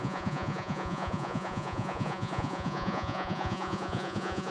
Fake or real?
fake